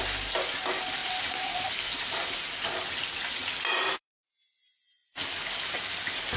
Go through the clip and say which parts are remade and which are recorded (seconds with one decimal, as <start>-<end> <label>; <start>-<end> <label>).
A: 0.0-1.0 recorded; 1.0-4.2 remade; 4.2-6.4 recorded